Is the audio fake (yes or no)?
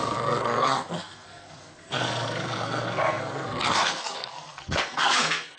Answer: yes